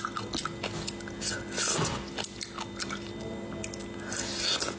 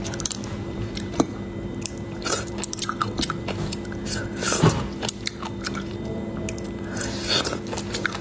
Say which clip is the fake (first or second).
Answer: second